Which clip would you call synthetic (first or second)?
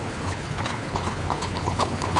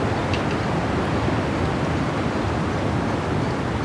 first